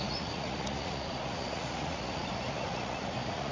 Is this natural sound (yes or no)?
no